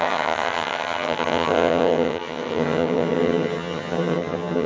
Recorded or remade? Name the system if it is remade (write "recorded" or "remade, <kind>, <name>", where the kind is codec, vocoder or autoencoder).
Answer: remade, vocoder, HiFi-GAN